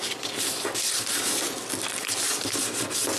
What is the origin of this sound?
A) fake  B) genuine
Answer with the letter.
B